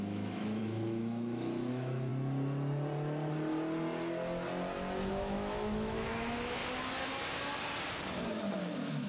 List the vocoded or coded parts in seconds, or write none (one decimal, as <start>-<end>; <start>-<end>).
0.0-2.1; 5.1-6.6; 8.1-9.1